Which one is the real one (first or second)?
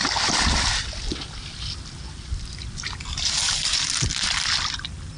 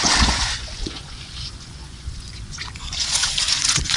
first